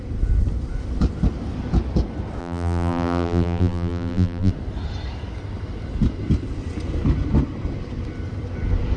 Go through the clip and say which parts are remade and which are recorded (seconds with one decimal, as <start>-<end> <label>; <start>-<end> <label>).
0.0-2.4 recorded; 2.4-4.5 remade; 4.5-9.0 recorded